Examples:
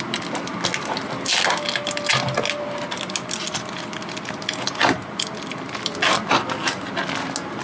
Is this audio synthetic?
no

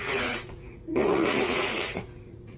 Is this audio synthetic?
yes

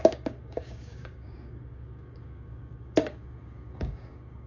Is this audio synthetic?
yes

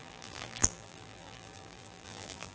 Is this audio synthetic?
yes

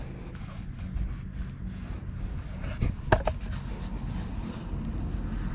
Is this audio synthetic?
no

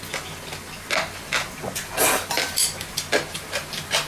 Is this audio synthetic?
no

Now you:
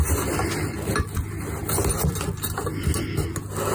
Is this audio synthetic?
no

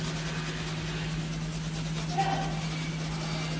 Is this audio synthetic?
no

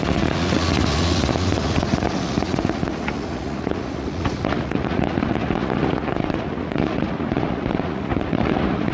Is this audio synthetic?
yes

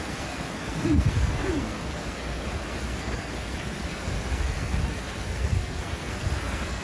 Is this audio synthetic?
yes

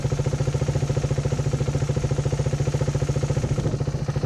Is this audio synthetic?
no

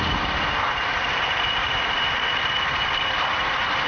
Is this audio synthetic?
yes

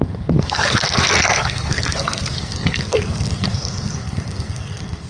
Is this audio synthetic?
yes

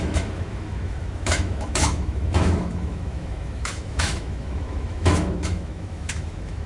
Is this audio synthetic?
yes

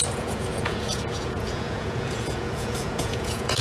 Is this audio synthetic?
yes